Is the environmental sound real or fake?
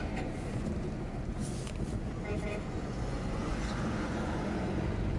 fake